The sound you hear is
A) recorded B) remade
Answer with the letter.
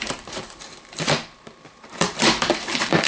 B